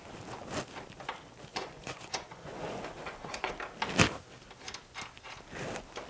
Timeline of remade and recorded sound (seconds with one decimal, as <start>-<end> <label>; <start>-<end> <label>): 0.0-1.5 recorded; 1.5-3.5 remade; 3.5-6.1 recorded